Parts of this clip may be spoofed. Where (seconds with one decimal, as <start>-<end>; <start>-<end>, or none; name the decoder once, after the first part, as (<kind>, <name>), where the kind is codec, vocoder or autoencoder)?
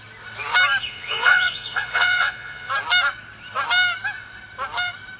0.8-2.7 (vocoder, Vocos)